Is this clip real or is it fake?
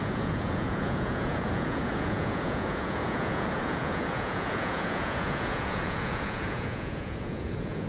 fake